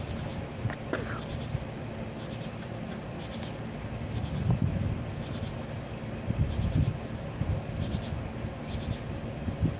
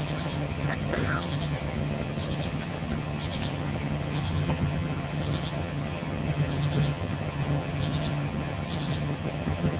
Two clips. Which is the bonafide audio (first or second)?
first